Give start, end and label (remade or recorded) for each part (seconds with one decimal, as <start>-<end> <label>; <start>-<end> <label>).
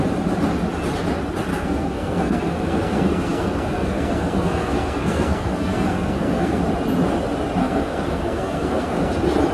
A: 0.0-1.5 recorded; 1.5-6.6 remade; 6.6-7.6 recorded; 7.6-9.1 remade; 9.1-9.5 recorded